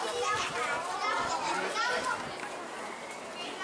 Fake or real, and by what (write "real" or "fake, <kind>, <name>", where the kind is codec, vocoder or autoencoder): real